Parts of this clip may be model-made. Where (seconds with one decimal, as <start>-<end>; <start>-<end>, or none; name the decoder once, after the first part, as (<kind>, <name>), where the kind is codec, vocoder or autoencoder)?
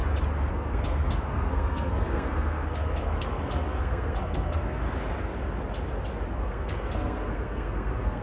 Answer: 0.5-4.8 (codec, SNAC); 6.4-8.2